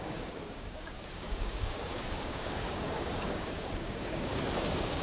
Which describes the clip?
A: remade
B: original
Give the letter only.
A